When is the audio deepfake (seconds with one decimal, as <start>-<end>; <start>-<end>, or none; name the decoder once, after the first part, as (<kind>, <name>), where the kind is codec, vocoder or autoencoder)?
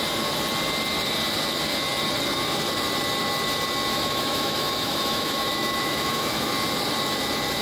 3.9-6.5 (autoencoder, DAC-VAE)